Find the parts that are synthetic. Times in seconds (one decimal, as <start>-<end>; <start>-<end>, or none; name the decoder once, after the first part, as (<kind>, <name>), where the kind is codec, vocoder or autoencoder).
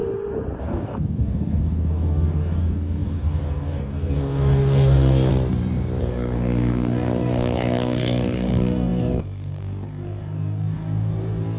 0.6-5.3 (codec, DAC); 6.0-11.6